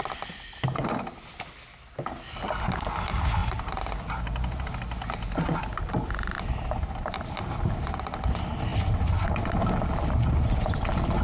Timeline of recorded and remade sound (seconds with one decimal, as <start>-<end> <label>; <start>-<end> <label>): 0.0-11.2 recorded